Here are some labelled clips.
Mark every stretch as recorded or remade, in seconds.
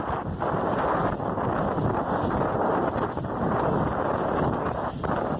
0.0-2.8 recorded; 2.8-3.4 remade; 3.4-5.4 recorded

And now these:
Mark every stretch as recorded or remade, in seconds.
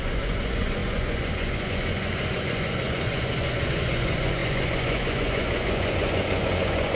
0.0-7.0 remade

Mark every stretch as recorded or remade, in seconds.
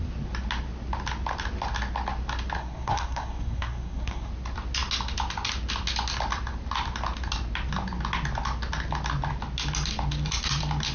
0.0-2.6 recorded; 2.6-4.3 remade; 4.3-10.9 recorded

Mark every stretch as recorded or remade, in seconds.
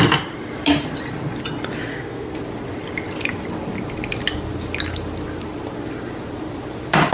0.0-1.9 recorded; 1.9-2.4 remade; 2.4-7.1 recorded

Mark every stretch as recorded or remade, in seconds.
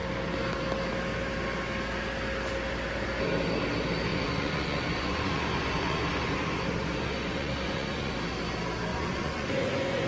0.0-4.1 recorded; 4.1-8.1 remade; 8.1-8.9 recorded; 8.9-10.1 remade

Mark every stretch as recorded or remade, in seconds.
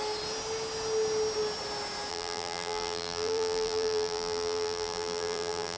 0.0-2.1 recorded; 2.1-5.8 remade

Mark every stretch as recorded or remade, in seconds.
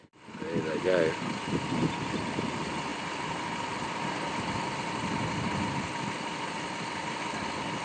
0.0-2.9 recorded; 2.9-7.2 remade; 7.2-7.8 recorded